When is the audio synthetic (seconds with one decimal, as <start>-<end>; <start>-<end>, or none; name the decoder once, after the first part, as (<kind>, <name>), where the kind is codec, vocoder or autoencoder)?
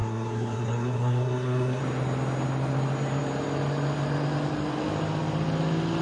0.0-1.8 (codec, SNAC)